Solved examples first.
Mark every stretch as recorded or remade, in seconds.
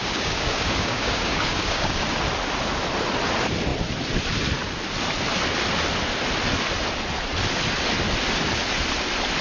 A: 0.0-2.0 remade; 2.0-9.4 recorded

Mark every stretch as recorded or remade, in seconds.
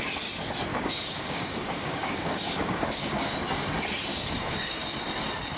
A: 0.0-0.7 recorded; 0.7-3.3 remade; 3.3-4.1 recorded; 4.1-4.8 remade; 4.8-5.6 recorded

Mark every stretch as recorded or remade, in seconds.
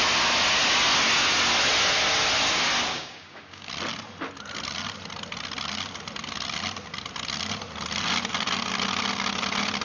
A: 0.0-2.9 recorded; 2.9-3.7 remade; 3.7-9.8 recorded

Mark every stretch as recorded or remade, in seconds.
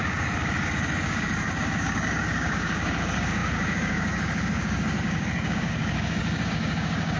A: 0.0-7.2 remade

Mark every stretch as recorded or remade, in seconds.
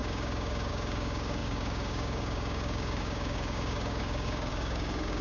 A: 0.0-5.2 remade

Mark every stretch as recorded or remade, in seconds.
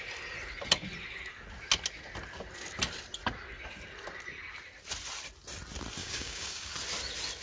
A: 0.0-6.0 recorded; 6.0-6.7 remade; 6.7-7.4 recorded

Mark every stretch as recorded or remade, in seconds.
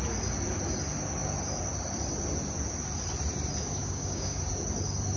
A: 0.0-3.8 recorded; 3.8-4.4 remade; 4.4-5.2 recorded